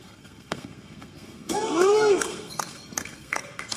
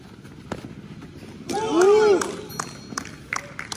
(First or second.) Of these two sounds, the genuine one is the second